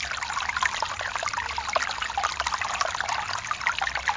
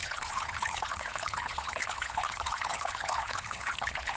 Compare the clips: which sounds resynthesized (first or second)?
second